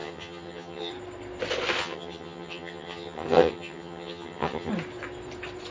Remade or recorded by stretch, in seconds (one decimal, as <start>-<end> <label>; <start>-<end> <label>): 0.0-0.9 remade; 0.9-1.8 recorded; 1.8-4.7 remade; 4.7-5.7 recorded